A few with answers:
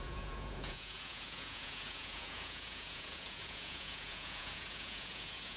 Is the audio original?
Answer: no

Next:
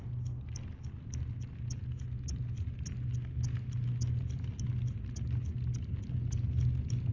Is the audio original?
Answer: yes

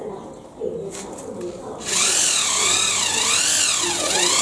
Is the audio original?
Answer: yes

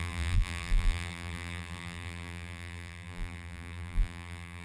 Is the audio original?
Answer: no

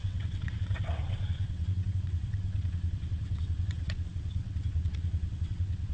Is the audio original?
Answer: no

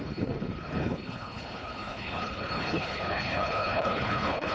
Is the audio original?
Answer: no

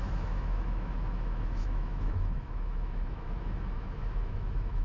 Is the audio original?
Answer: no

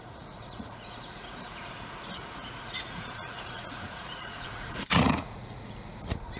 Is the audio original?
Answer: no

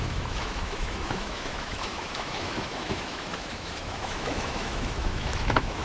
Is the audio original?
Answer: no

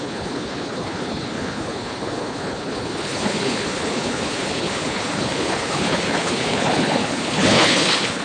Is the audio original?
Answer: no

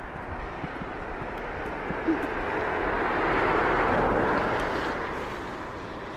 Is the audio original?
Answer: yes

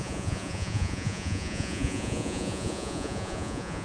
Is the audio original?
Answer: no